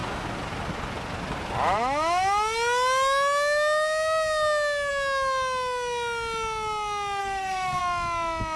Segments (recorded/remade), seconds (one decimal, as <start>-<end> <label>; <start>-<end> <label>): 0.0-7.2 recorded; 7.2-7.8 remade; 7.8-8.6 recorded